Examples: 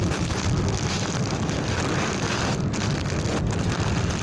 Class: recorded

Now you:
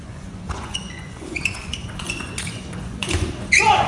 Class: remade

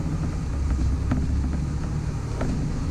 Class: recorded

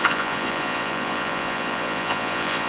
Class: remade